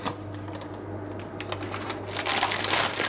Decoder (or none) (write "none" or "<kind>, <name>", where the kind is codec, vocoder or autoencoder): none